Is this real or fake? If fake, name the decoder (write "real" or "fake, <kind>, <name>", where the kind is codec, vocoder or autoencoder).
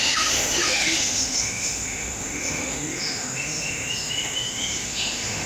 fake, autoencoder, DAC-VAE